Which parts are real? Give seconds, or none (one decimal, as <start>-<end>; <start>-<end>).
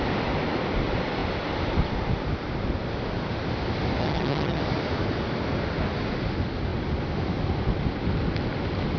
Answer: 0.0-4.0; 4.6-9.0